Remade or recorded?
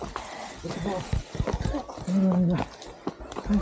recorded